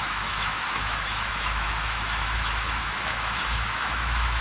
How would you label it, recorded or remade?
remade